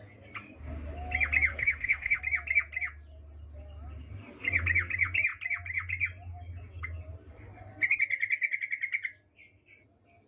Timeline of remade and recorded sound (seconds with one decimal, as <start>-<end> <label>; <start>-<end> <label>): 0.0-1.5 recorded; 1.5-2.2 remade; 2.2-10.3 recorded